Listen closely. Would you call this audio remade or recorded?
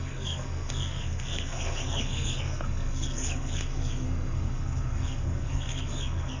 remade